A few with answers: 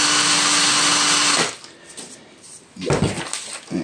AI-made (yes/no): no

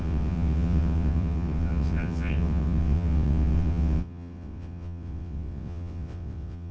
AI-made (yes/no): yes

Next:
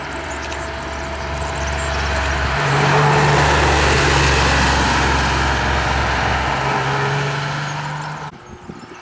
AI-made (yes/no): no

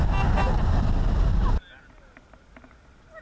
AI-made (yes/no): no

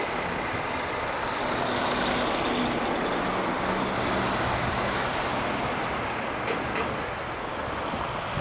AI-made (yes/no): no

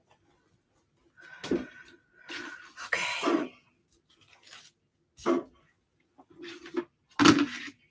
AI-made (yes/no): no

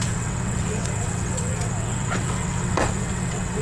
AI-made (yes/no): yes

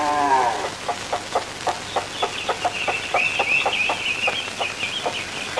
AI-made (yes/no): no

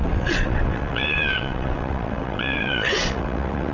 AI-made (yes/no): yes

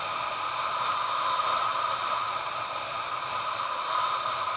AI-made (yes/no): no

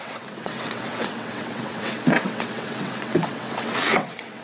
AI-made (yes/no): yes